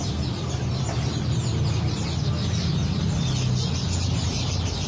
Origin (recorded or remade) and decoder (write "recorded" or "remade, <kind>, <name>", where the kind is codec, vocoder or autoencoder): recorded